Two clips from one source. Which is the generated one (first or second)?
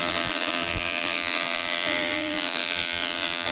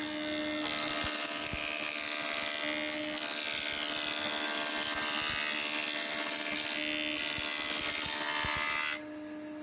first